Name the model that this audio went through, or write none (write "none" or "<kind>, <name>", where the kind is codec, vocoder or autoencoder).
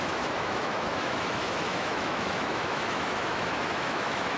autoencoder, DAC-VAE